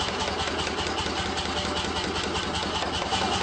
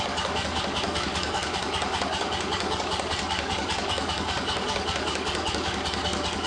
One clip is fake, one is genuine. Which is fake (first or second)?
second